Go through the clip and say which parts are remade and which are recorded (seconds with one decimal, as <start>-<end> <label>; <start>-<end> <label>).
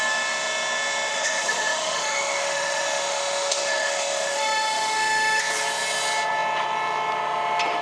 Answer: 0.0-1.1 recorded; 1.1-5.4 remade; 5.4-7.8 recorded